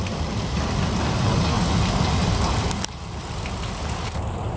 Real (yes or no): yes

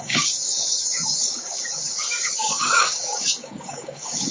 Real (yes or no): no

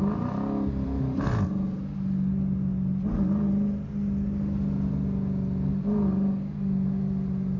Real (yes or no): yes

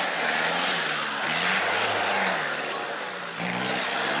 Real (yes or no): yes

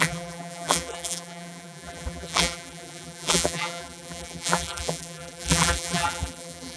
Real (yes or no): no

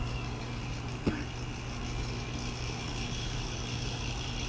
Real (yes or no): no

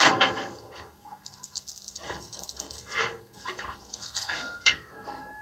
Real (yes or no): no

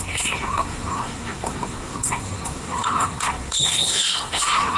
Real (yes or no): no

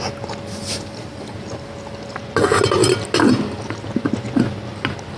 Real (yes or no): yes